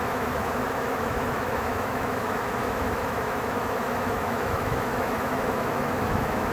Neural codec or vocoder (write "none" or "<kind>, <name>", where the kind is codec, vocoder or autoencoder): autoencoder, DAC-VAE